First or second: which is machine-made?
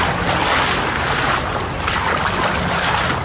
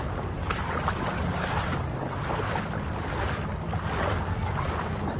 second